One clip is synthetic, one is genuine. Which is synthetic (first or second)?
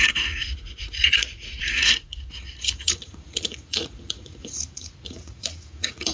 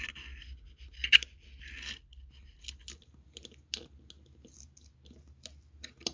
first